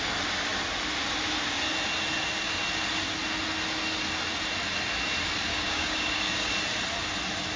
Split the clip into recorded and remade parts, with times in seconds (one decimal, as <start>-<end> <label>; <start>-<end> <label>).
0.0-5.5 recorded; 5.5-6.5 remade; 6.5-7.6 recorded